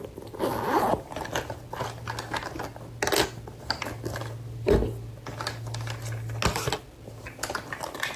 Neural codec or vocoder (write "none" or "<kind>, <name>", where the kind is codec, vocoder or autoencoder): none